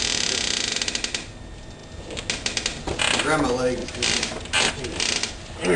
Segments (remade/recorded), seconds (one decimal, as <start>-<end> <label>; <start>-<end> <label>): 0.0-3.8 recorded; 3.8-4.7 remade; 4.7-5.8 recorded